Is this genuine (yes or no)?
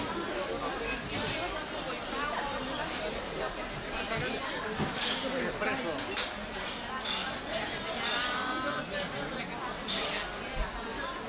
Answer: yes